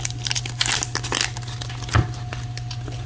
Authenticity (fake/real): real